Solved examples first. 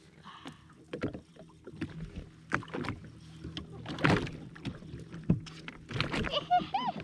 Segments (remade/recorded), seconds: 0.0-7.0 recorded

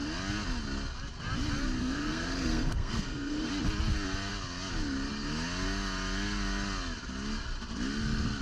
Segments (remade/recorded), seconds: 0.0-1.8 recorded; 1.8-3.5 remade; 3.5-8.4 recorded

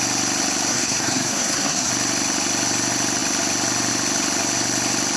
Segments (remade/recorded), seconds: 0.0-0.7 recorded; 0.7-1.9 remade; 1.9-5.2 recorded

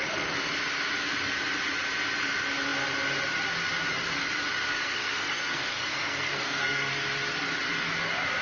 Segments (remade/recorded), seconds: 0.0-4.7 recorded; 4.7-6.9 remade; 6.9-8.4 recorded

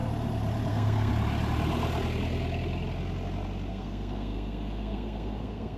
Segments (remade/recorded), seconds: 0.0-0.7 recorded; 0.7-1.1 remade; 1.1-3.7 recorded; 3.7-5.8 remade

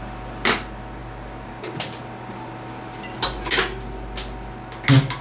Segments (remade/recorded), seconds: 0.0-5.2 recorded

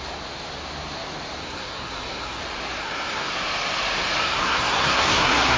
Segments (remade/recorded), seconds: 0.0-1.4 recorded; 1.4-2.4 remade; 2.4-2.8 recorded; 2.8-3.3 remade; 3.3-4.2 recorded; 4.2-5.6 remade

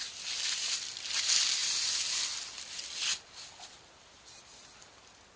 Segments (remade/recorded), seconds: 0.0-5.4 recorded